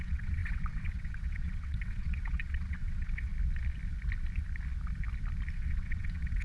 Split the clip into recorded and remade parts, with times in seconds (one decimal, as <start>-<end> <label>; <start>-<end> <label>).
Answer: 0.0-3.3 remade; 3.3-5.5 recorded; 5.5-6.4 remade